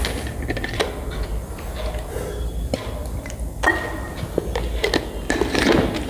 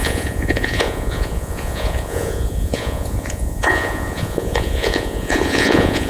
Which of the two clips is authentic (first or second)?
first